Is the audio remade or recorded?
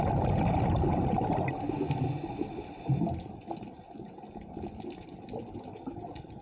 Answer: recorded